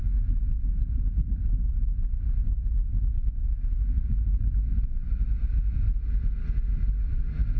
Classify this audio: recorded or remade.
recorded